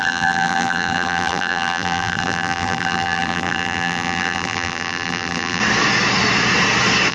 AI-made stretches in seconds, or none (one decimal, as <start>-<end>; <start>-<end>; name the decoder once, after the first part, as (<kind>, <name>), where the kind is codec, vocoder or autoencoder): 0.0-5.6 (vocoder, BigVGAN v2)